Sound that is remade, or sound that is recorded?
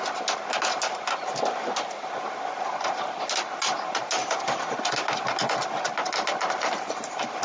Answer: recorded